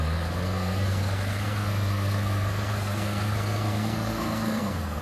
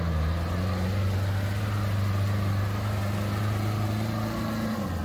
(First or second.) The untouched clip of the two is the second